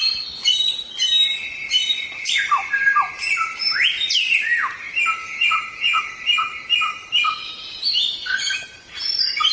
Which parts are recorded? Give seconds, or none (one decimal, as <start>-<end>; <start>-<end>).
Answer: 0.0-5.2; 6.0-9.5